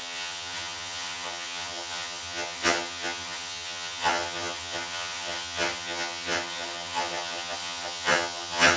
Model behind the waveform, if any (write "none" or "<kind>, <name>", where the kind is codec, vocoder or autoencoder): vocoder, HiFi-GAN